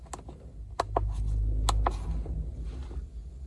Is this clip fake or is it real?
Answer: real